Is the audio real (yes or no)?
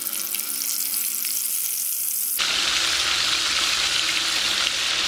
yes